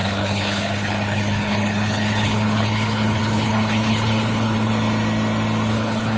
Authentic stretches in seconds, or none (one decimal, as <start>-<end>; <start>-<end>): 4.7-5.7